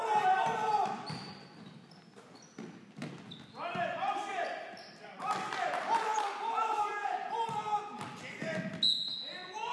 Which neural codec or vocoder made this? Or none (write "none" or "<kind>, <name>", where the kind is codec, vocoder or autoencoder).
none